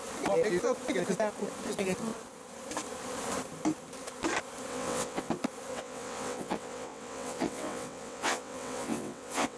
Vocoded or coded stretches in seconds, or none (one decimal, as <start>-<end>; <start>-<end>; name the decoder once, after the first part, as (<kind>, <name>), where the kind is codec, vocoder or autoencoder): 4.7-5.3 (vocoder, WaveNeXt); 5.7-9.6